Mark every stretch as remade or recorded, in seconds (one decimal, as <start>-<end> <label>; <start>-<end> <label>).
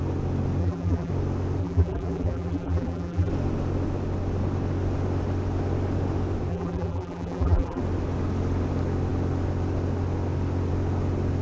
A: 0.0-0.6 recorded; 0.6-1.1 remade; 1.1-1.6 recorded; 1.6-3.3 remade; 3.3-6.5 recorded; 6.5-7.8 remade; 7.8-11.4 recorded